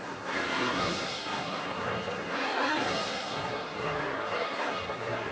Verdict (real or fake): fake